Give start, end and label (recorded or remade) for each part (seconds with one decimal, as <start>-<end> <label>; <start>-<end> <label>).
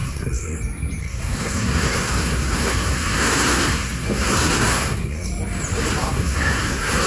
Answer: 0.0-0.6 remade; 0.6-1.0 recorded; 1.0-5.3 remade; 5.3-6.0 recorded; 6.0-7.1 remade